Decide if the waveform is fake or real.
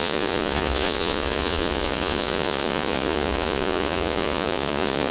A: fake